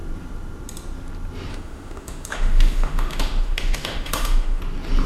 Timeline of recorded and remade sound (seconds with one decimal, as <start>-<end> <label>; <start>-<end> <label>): 0.0-1.5 recorded; 1.5-4.6 remade; 4.6-5.1 recorded